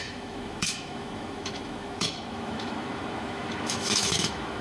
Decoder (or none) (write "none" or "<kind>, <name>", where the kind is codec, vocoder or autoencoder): autoencoder, DAC-VAE